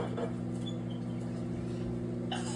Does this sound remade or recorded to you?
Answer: recorded